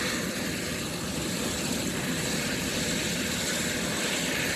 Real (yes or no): yes